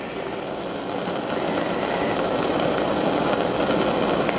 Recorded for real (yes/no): yes